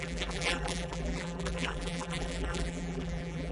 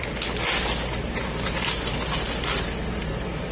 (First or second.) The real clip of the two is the second